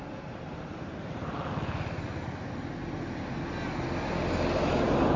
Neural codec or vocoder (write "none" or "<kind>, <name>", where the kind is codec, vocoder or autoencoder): none